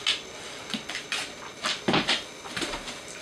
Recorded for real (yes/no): yes